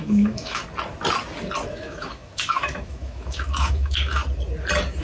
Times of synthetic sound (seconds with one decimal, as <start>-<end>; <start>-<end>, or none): 0.0-0.6; 1.7-4.2